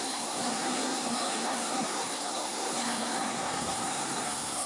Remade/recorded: remade